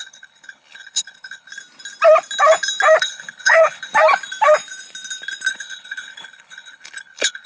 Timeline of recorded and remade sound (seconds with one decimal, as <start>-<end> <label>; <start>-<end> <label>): 0.0-1.5 remade; 1.5-3.0 recorded; 3.0-3.9 remade; 3.9-5.5 recorded; 5.5-7.5 remade